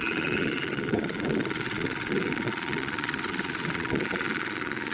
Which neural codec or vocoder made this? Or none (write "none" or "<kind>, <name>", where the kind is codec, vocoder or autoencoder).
vocoder, Vocos